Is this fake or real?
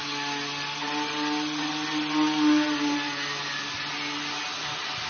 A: real